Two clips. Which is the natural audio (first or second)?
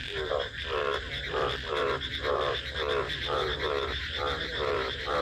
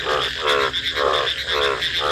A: second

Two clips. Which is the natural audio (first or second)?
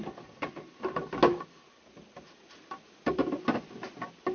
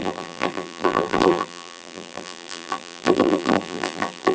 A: first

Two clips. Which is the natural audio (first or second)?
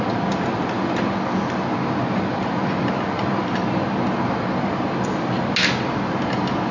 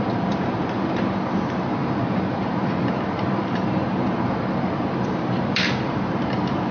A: first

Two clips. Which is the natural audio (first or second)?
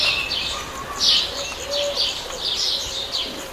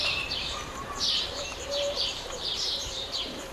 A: first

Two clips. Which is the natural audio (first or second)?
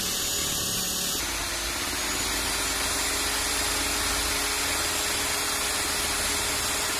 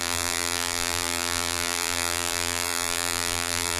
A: first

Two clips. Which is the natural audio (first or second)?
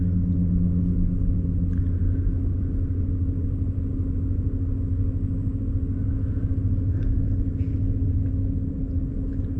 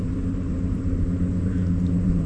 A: first